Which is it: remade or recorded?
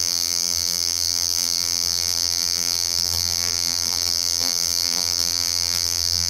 remade